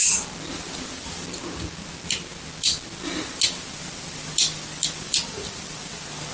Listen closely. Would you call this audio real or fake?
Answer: real